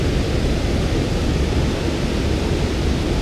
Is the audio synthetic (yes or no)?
no